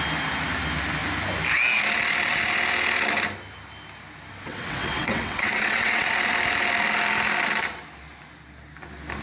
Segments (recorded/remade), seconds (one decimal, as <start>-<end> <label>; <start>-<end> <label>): 0.0-4.3 recorded; 4.3-6.1 remade; 6.1-9.2 recorded